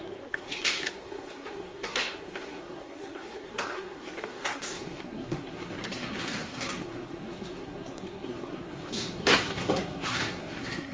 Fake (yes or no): yes